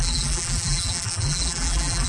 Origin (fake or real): fake